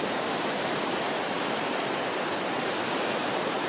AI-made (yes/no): no